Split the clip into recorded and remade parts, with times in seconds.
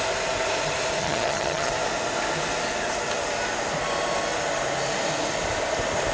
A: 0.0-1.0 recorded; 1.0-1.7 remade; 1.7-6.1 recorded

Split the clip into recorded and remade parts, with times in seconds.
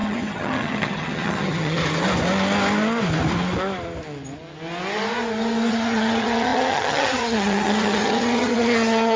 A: 0.0-1.8 remade; 1.8-5.7 recorded; 5.7-9.2 remade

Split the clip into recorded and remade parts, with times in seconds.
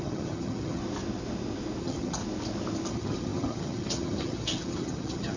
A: 0.0-0.8 remade; 0.8-1.8 recorded; 1.8-2.2 remade; 2.2-2.9 recorded; 2.9-5.4 remade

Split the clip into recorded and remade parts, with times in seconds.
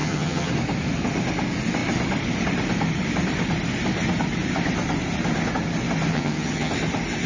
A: 0.0-0.5 remade; 0.5-6.1 recorded; 6.1-6.7 remade; 6.7-7.3 recorded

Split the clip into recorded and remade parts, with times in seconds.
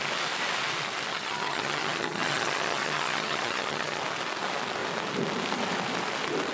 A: 0.0-1.1 recorded; 1.1-4.0 remade; 4.0-6.5 recorded